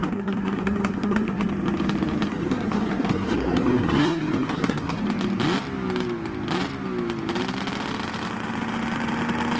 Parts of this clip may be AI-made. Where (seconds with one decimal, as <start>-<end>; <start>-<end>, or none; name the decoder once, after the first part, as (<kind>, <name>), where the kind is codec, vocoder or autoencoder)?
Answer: 0.0-1.5 (codec, SNAC); 2.3-5.0